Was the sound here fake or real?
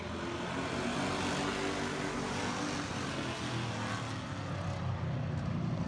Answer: real